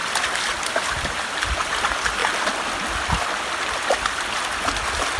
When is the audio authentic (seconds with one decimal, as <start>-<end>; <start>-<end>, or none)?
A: 0.0-0.7; 2.2-5.2